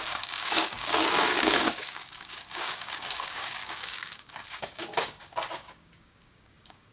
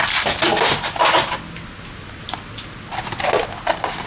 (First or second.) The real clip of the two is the second